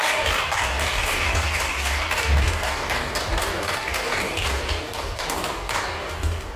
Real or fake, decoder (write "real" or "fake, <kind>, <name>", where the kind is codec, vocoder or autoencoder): fake, codec, DAC